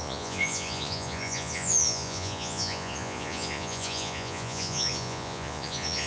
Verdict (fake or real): fake